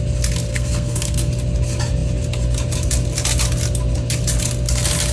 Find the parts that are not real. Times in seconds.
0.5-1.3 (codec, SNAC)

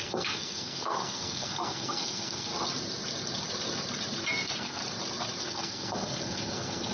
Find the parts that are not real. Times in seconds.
0.0-2.5 (codec, SNAC); 4.3-4.8; 5.4-6.9

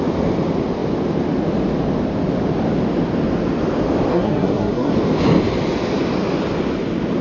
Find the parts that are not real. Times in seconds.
4.1-4.9 (codec, SNAC)

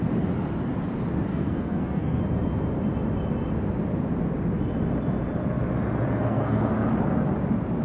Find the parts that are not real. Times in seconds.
1.3-2.2 (codec, SNAC); 6.2-6.7

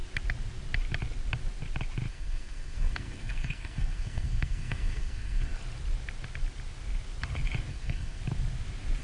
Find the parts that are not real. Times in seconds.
2.1-5.6 (codec, SNAC); 7.7-8.2

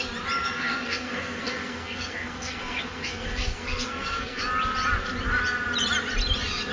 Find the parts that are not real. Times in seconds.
0.4-4.4 (codec, SNAC)